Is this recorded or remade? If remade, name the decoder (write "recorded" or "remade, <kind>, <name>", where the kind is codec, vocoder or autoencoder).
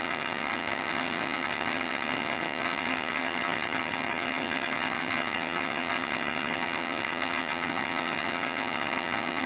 remade, vocoder, HiFi-GAN